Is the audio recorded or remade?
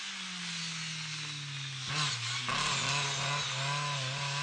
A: recorded